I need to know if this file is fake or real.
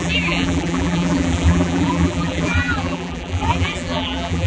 fake